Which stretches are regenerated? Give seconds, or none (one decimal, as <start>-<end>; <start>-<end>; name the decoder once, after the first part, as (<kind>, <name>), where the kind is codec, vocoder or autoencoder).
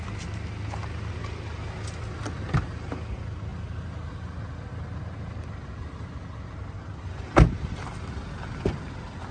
none